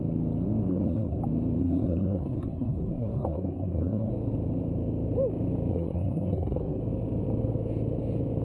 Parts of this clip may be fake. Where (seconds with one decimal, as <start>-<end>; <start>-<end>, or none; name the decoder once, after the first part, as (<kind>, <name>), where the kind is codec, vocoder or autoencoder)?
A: 0.7-1.2 (codec, SNAC); 1.6-4.1; 5.7-6.8